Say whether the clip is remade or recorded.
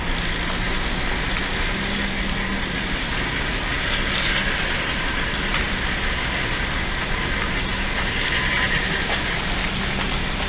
recorded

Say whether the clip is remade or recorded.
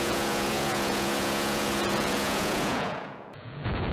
remade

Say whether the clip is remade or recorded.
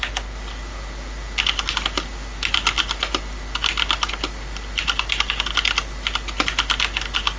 recorded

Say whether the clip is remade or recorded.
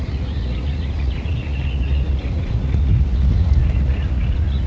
remade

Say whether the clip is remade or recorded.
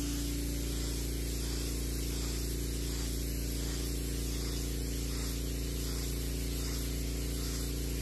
recorded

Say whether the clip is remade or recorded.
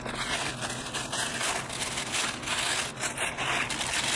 recorded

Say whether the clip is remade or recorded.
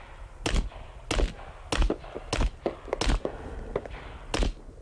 recorded